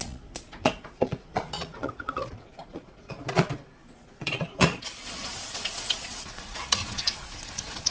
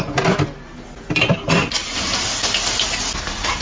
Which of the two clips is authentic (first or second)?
second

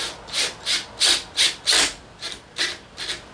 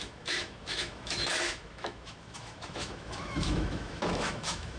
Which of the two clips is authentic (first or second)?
first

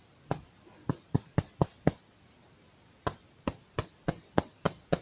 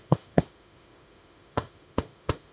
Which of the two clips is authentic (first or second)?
first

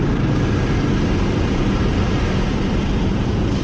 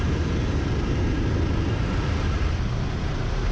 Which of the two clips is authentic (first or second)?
first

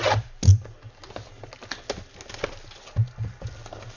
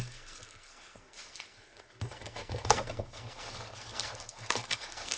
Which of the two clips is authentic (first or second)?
first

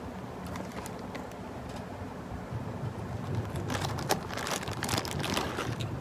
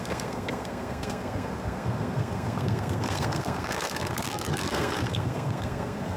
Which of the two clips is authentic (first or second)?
first